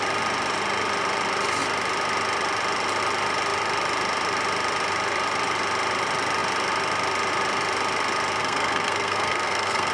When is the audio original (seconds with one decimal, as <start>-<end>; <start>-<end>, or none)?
0.0-8.4